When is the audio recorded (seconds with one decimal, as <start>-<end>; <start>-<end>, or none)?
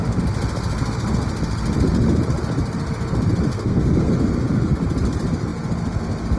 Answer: 0.0-3.5; 4.1-6.4